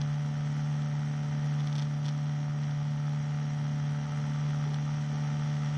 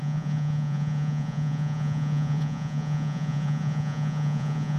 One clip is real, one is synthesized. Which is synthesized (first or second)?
second